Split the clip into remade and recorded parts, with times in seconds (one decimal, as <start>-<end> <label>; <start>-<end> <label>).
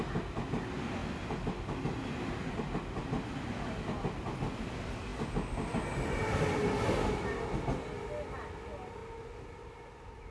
0.0-10.3 recorded